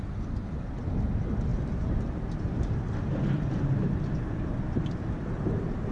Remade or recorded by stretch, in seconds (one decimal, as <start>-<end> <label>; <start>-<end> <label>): 0.0-5.9 recorded